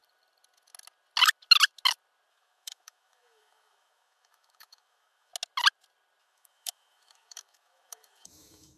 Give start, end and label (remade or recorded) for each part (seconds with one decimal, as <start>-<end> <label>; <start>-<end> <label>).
0.0-2.3 recorded; 2.3-5.3 remade; 5.3-6.2 recorded; 6.2-8.8 remade